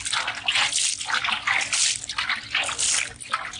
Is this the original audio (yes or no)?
yes